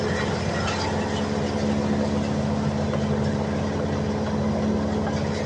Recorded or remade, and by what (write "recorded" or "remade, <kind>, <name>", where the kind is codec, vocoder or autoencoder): recorded